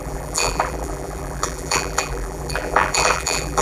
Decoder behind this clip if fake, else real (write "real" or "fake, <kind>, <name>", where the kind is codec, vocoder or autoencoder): fake, vocoder, BigVGAN v2